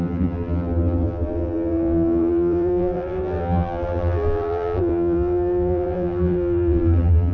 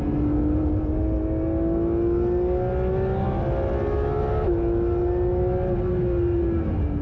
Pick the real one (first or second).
second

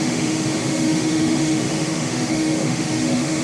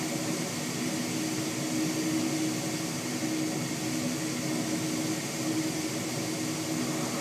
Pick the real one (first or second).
second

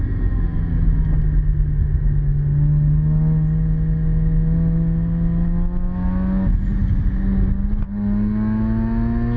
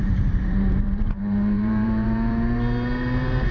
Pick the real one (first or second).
first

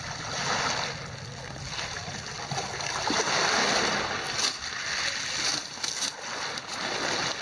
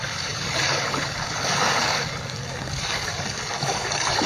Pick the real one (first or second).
first